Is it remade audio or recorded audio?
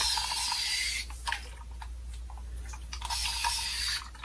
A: recorded